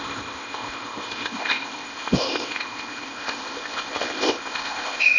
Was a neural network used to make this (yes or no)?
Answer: yes